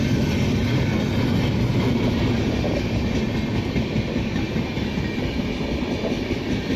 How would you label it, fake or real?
real